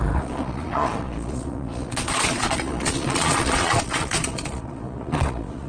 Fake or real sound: fake